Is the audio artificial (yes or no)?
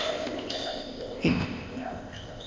yes